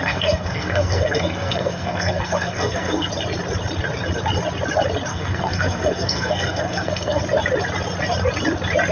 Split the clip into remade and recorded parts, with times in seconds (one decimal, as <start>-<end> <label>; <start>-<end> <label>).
0.0-3.1 remade; 3.1-5.1 recorded; 5.1-7.2 remade; 7.2-8.9 recorded